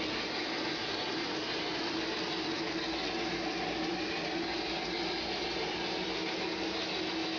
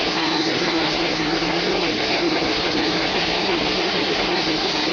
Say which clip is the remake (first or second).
second